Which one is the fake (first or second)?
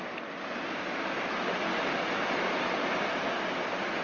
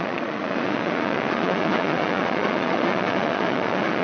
second